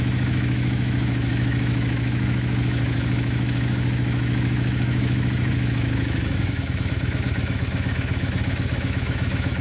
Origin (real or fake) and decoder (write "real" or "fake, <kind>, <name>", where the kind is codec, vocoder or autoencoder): fake, autoencoder, DAC-VAE